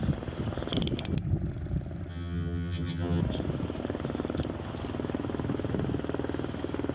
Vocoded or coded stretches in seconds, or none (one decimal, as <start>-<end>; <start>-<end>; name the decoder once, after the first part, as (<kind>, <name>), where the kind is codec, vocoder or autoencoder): 2.1-3.2 (vocoder, HiFi-GAN)